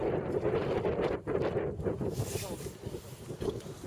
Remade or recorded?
recorded